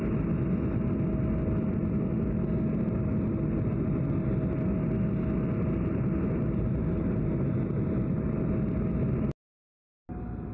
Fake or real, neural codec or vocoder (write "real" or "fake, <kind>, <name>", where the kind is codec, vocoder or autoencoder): real